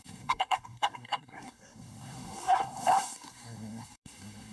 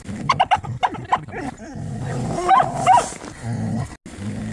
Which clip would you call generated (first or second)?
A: first